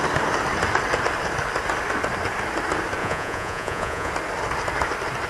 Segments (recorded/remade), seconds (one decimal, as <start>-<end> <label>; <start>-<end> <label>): 0.0-3.0 recorded; 3.0-4.1 remade; 4.1-5.3 recorded